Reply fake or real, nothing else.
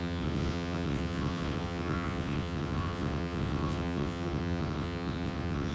fake